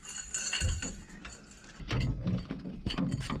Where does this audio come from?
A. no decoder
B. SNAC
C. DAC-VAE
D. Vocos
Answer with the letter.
A